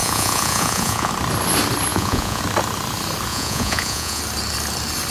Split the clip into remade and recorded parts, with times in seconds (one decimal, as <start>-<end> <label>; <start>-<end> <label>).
0.0-1.1 remade; 1.1-1.9 recorded; 1.9-2.4 remade; 2.4-3.3 recorded; 3.3-4.2 remade; 4.2-5.1 recorded